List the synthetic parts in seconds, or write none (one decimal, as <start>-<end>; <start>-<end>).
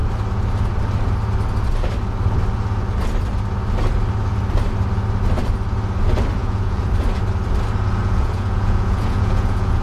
6.4-6.9; 8.0-9.8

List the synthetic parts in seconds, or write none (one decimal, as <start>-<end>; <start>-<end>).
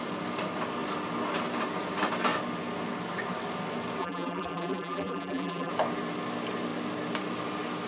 4.0-5.7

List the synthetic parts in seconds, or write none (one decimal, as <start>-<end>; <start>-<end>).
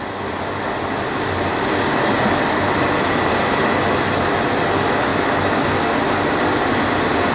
none